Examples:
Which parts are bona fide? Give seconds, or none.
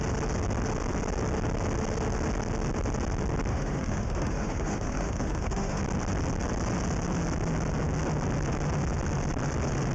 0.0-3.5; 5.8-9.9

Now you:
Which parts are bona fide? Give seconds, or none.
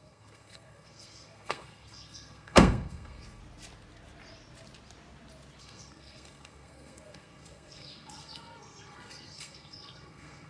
3.4-5.6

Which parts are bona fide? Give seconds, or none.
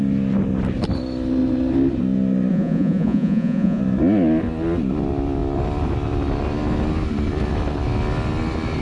0.0-2.5; 3.8-8.8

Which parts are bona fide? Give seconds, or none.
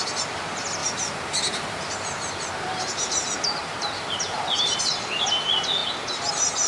0.0-0.8; 4.8-6.7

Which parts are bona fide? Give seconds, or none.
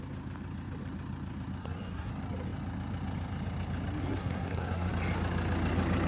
0.0-1.6; 2.1-4.0; 4.9-6.1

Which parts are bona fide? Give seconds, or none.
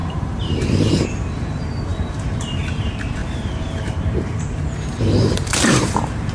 none